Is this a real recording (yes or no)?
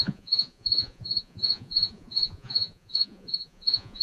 no